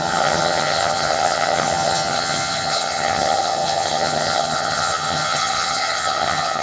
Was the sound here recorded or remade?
remade